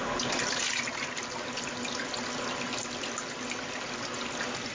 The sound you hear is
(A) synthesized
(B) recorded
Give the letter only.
B